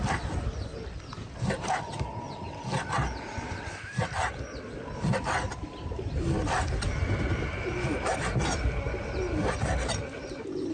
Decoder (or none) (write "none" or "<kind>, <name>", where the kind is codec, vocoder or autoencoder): none